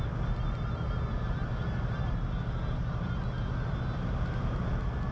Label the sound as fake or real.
real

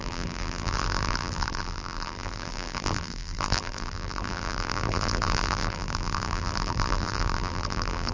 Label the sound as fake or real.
fake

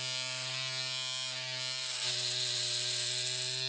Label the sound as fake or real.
real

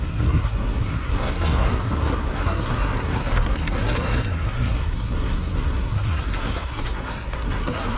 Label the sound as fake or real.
fake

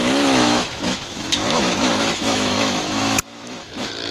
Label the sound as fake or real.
fake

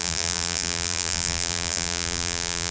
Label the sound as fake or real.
fake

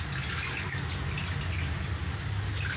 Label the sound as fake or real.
real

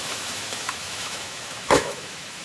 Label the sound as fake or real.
fake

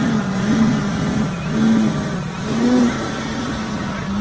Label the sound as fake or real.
real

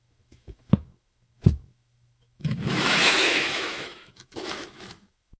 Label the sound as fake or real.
fake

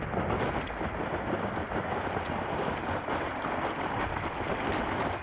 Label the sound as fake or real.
real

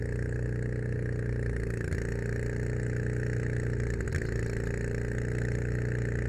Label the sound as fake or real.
real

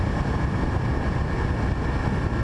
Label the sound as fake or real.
real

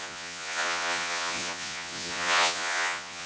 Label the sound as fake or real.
fake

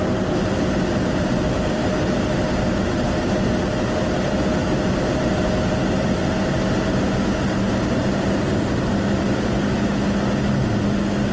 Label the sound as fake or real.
real